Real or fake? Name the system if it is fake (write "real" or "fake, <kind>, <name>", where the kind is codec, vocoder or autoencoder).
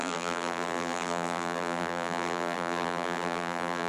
fake, vocoder, BigVGAN v2